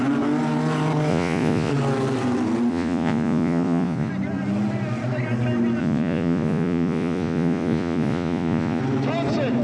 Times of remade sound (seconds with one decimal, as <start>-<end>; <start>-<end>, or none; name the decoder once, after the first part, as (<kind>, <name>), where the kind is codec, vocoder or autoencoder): 1.1-1.7 (vocoder, Vocos); 2.7-4.1; 5.8-8.8